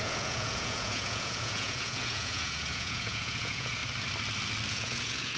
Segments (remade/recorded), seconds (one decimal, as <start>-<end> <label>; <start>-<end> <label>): 0.0-3.8 remade; 3.8-4.7 recorded; 4.7-5.4 remade